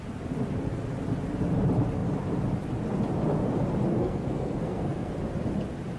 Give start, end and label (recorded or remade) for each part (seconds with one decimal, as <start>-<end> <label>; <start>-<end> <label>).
0.0-3.9 recorded; 3.9-5.1 remade; 5.1-6.0 recorded